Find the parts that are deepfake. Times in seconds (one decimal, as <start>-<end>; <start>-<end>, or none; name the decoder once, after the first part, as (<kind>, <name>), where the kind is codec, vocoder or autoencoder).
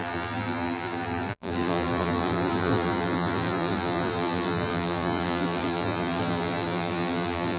0.0-7.6 (vocoder, BigVGAN v2)